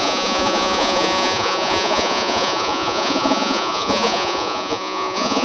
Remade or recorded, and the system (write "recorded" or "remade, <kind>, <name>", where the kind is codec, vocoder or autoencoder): remade, vocoder, Vocos